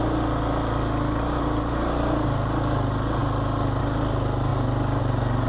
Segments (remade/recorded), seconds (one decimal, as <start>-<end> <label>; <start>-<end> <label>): 0.0-5.5 recorded